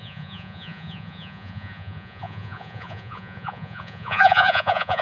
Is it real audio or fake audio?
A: fake